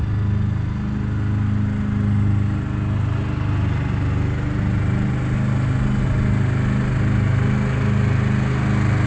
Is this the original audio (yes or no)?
yes